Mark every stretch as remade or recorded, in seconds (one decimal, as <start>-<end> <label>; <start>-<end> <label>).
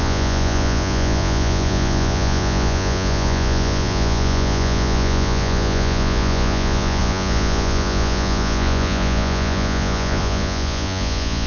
0.0-11.5 remade